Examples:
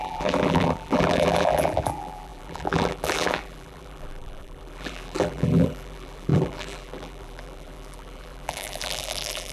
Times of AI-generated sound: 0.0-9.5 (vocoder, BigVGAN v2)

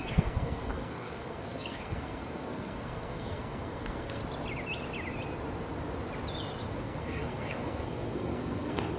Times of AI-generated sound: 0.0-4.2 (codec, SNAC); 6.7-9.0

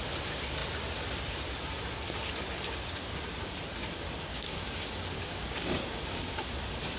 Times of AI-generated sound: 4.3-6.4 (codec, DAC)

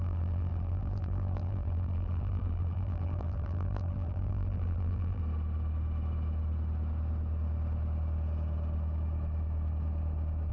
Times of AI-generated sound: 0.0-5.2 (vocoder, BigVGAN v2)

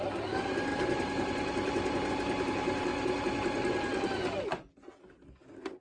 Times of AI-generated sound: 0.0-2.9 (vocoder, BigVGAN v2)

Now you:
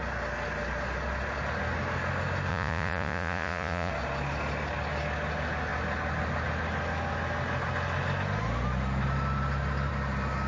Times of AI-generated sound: 2.5-3.9 (vocoder, Vocos)

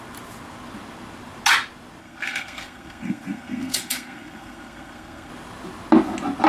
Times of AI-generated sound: 2.0-5.3 (codec, SNAC)

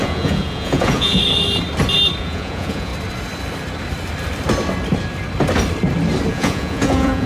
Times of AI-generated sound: 0.0-1.2 (vocoder, Vocos); 2.2-2.9; 6.3-7.3